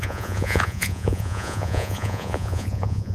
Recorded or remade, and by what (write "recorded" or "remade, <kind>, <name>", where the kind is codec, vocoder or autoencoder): remade, vocoder, Vocos